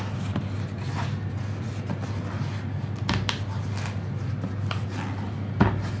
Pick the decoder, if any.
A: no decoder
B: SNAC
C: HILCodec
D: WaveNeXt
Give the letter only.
A